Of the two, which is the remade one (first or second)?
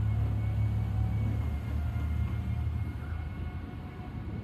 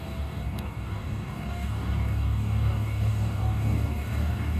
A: second